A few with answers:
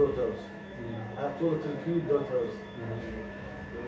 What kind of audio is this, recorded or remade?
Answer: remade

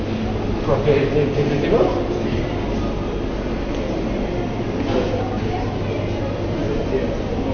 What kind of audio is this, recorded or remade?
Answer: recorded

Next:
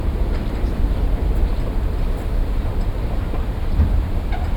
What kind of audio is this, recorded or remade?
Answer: recorded